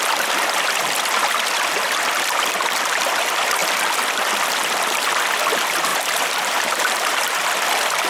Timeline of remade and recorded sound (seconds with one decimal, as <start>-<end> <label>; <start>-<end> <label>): 0.0-5.9 recorded; 5.9-7.5 remade; 7.5-8.1 recorded